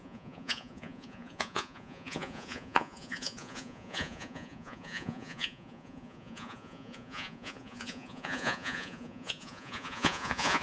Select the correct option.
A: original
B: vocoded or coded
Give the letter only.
B